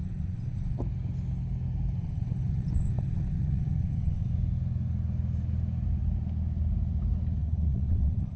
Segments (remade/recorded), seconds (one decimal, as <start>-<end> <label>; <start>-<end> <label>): 0.0-0.8 remade; 0.8-2.0 recorded; 2.0-4.3 remade; 4.3-7.4 recorded; 7.4-8.4 remade